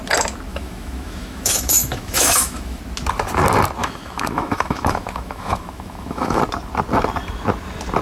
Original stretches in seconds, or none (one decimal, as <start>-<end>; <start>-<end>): 0.0-0.5; 2.8-3.8; 6.4-8.0